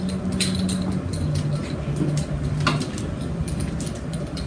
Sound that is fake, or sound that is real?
real